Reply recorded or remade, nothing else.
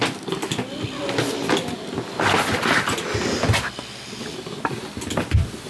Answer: recorded